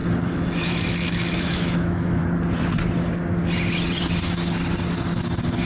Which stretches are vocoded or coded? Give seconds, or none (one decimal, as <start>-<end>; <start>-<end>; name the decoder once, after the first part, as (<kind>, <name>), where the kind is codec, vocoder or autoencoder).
0.0-2.2 (autoencoder, DAC-VAE)